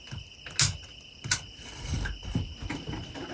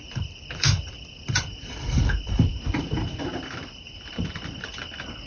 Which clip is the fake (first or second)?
second